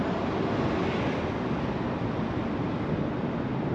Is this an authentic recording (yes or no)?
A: yes